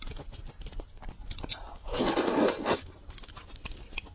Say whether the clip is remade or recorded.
recorded